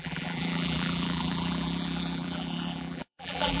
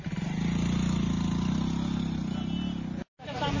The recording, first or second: second